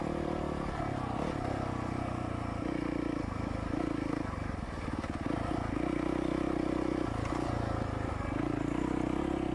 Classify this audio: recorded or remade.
recorded